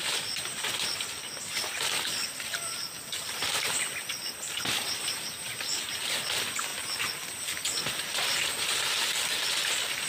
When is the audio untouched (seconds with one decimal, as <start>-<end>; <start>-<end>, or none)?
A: 0.0-10.1